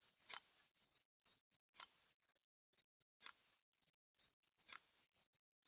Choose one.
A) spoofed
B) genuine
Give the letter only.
B